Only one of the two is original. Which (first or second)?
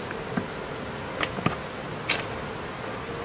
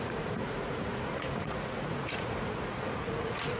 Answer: first